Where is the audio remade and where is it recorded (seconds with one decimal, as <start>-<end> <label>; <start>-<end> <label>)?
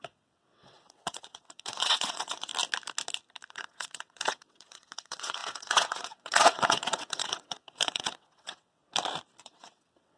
0.0-2.5 remade; 2.5-3.5 recorded; 3.5-8.8 remade; 8.8-9.4 recorded; 9.4-10.2 remade